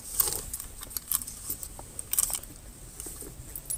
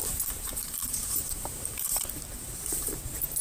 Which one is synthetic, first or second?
second